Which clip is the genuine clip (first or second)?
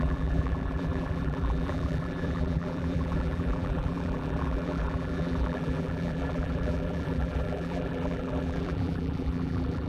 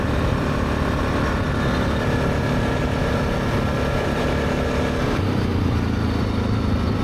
second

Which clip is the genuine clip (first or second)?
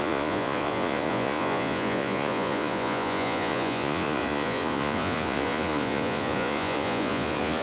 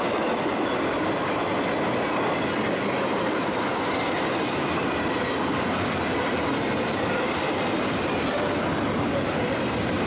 second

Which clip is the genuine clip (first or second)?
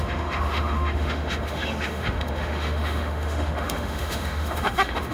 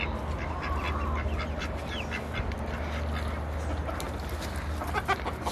second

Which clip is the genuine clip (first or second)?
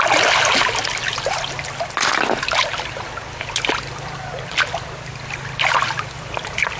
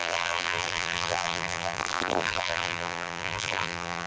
first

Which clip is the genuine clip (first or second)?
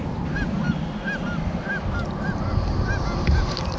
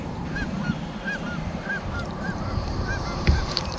first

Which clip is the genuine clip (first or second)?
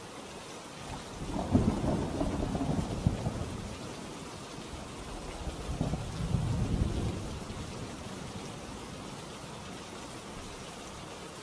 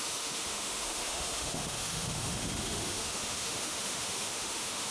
first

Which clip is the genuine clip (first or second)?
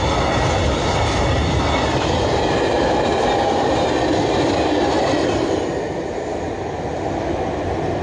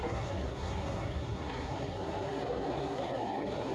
first